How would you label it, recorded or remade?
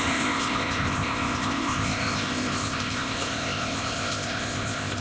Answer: remade